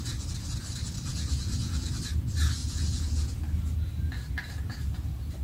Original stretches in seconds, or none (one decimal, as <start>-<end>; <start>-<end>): 0.0-1.1; 1.9-2.6; 3.3-5.4